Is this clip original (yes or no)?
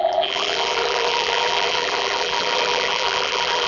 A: no